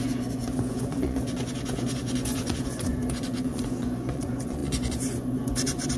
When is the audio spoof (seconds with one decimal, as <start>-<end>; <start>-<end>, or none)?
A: 0.0-6.0